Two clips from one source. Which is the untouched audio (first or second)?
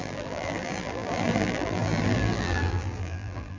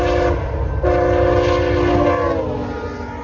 second